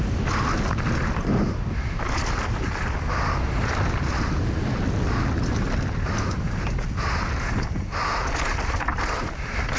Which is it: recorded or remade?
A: recorded